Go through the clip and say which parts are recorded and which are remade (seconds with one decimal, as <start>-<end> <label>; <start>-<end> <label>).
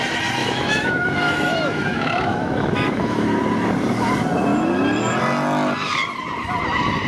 0.0-0.4 recorded; 0.4-3.4 remade; 3.4-7.1 recorded